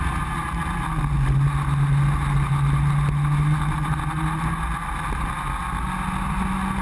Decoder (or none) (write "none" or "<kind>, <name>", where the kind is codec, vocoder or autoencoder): none